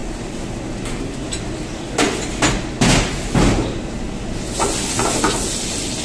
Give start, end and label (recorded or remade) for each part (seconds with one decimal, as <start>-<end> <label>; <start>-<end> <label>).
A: 0.0-6.0 recorded

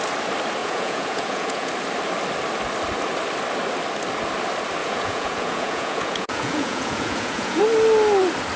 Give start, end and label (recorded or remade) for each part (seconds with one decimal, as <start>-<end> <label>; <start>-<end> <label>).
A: 0.0-0.6 recorded; 0.6-1.7 remade; 1.7-4.8 recorded; 4.8-7.6 remade; 7.6-8.6 recorded